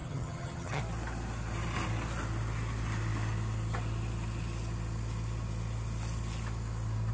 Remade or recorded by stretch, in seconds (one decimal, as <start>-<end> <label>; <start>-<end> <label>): 0.0-0.8 remade; 0.8-7.1 recorded